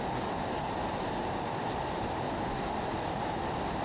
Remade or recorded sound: recorded